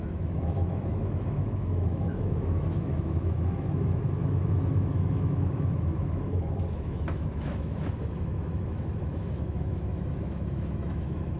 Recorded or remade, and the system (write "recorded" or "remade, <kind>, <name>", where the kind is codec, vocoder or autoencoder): remade, autoencoder, DAC-VAE